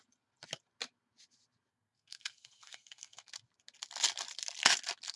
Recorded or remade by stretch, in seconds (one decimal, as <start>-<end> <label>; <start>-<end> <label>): 0.0-1.7 recorded; 1.7-3.3 remade; 3.3-5.2 recorded